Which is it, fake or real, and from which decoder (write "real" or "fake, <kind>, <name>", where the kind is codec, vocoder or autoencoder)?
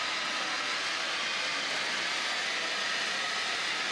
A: real